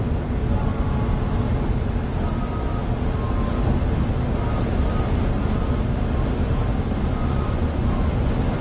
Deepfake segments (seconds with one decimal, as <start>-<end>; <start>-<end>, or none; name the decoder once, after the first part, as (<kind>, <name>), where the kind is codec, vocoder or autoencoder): 0.4-0.9 (vocoder, Vocos); 7.1-8.1